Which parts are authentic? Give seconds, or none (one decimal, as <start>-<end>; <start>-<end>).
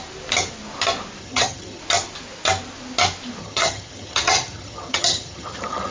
0.0-1.2; 1.8-3.4